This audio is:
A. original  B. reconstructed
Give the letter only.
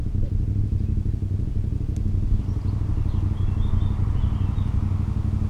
A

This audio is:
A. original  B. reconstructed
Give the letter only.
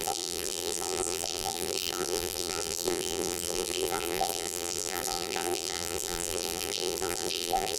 B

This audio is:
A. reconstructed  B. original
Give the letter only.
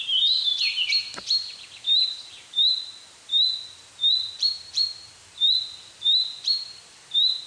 A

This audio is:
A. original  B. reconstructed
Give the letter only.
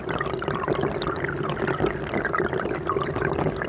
A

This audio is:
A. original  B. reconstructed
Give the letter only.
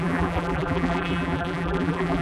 B